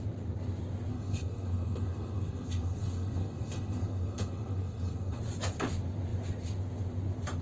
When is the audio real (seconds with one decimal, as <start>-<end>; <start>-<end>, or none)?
0.0-0.9; 5.2-7.4